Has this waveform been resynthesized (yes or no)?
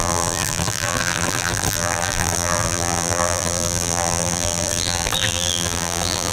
yes